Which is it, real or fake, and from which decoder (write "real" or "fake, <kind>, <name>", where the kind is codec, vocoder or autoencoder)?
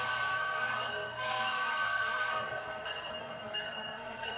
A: fake, codec, SNAC